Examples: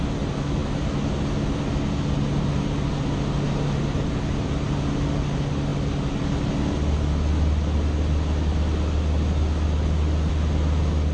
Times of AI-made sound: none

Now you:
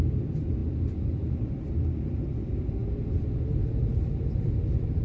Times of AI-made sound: none

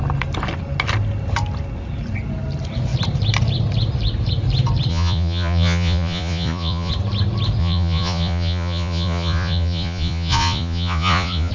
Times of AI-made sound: 4.9-6.9 (vocoder, Vocos); 7.6-11.5

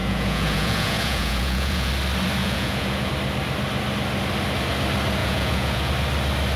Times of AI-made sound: 0.0-1.9 (vocoder, Vocos); 2.4-3.1; 5.2-5.9